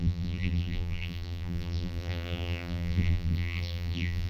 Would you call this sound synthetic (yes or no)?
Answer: yes